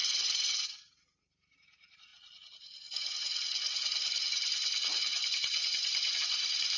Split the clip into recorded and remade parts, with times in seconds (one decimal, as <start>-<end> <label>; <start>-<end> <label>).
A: 0.0-0.8 recorded; 0.8-2.1 remade; 2.1-6.2 recorded; 6.2-6.8 remade